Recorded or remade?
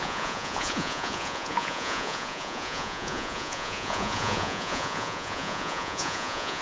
remade